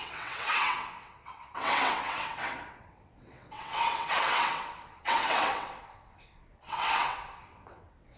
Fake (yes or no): yes